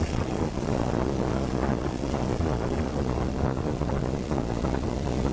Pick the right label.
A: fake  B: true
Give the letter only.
A